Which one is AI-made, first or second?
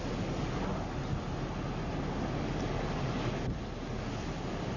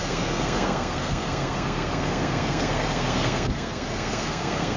second